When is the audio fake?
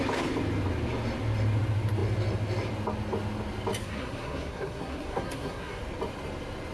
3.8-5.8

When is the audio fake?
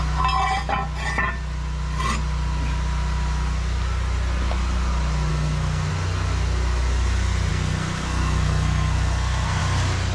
5.3-5.9; 7.5-9.6